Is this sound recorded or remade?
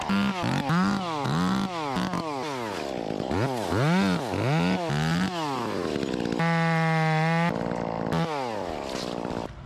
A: recorded